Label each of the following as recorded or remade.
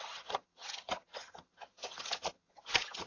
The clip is remade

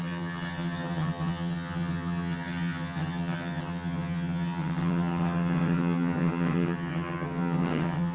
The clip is remade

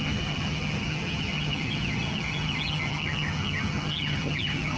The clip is remade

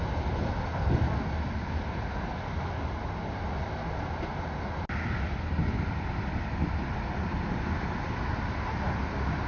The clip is recorded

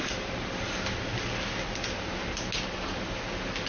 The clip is recorded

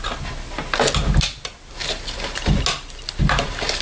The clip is recorded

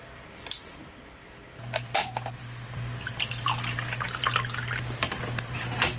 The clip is recorded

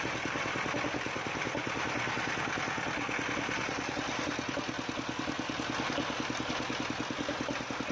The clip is recorded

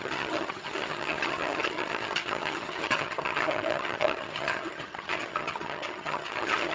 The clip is remade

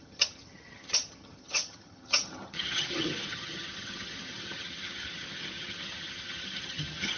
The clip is remade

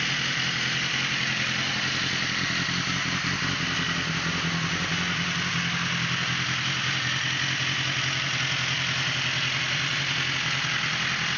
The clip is recorded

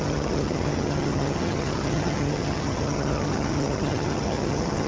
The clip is remade